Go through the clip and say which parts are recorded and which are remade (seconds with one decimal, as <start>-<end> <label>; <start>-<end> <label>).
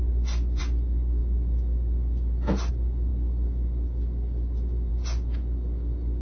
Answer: 0.0-6.2 recorded